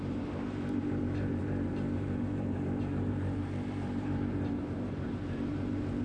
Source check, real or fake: fake